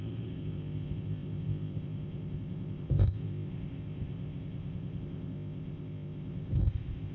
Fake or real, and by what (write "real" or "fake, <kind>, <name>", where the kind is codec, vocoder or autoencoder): fake, codec, ZipCodec